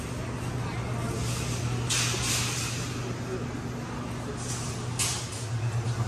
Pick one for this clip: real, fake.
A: real